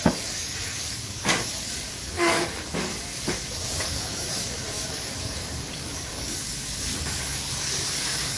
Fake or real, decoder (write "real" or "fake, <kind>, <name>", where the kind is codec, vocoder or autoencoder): fake, codec, DAC